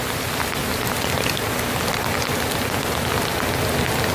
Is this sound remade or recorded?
recorded